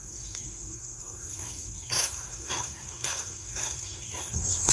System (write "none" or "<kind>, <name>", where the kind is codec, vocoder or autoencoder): codec, SNAC